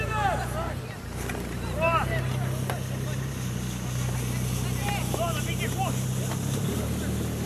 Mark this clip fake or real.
real